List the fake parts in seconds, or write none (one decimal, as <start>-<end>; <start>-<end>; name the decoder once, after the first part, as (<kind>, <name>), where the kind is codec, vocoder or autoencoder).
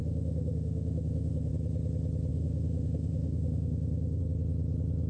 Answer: 0.0-1.5 (autoencoder, DAC-VAE); 2.3-4.2